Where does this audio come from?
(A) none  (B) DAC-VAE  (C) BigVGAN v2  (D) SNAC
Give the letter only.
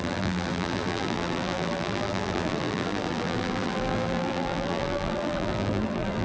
C